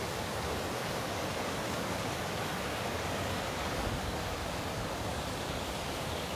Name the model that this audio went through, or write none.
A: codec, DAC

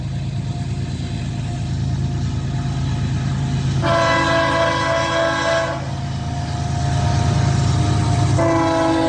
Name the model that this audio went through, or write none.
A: none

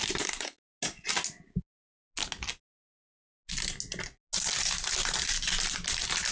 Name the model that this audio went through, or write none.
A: none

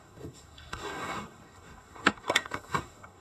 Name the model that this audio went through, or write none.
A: codec, SNAC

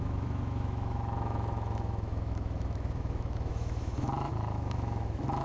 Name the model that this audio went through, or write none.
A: autoencoder, DAC-VAE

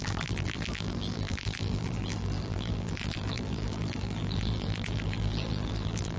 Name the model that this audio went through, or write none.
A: vocoder, BigVGAN v2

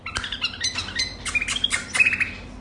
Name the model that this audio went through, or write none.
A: none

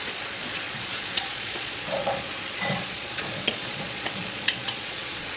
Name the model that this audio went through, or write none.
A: vocoder, Vocos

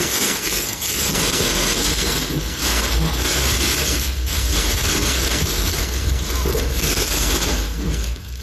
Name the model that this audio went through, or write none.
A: codec, SNAC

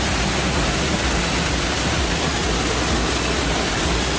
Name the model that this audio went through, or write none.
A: none